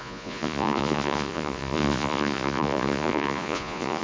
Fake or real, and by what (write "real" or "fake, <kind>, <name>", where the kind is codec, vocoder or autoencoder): fake, vocoder, Vocos